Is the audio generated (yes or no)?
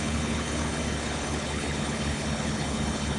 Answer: yes